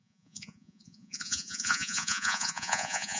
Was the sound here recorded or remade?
remade